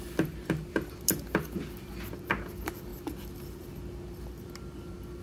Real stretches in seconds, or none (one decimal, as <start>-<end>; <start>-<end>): 0.0-5.2